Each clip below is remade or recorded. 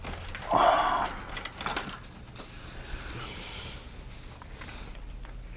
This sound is recorded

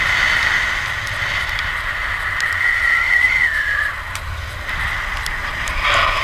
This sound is recorded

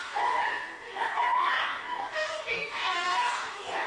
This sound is remade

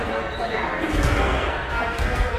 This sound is remade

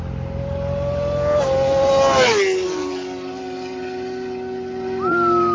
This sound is recorded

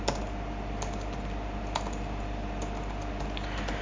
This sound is recorded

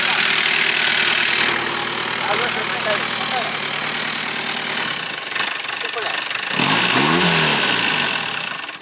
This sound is recorded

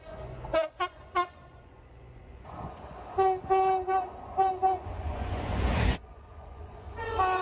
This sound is remade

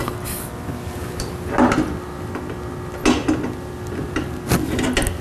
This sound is recorded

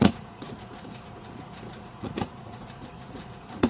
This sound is remade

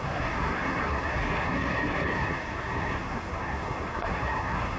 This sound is remade